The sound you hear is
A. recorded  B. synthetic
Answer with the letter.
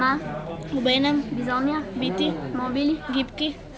A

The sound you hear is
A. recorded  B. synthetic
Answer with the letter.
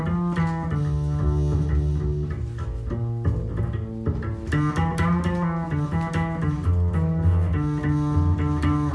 A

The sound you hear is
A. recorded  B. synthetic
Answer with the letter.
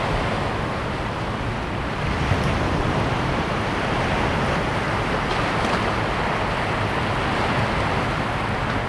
A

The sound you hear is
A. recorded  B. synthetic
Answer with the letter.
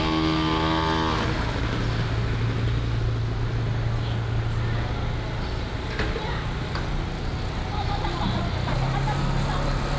A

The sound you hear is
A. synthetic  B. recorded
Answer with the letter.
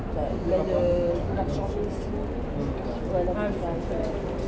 B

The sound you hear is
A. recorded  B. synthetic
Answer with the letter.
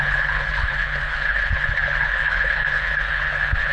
B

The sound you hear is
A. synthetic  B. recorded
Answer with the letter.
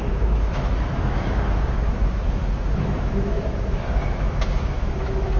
A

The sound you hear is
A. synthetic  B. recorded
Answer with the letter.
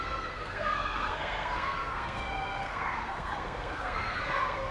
A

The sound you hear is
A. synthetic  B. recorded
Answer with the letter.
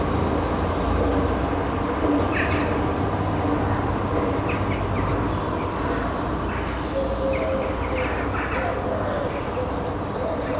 B